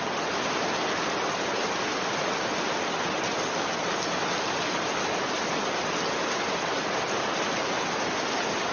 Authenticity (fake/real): real